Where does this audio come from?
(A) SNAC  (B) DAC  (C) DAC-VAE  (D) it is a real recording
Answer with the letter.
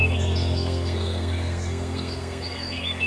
A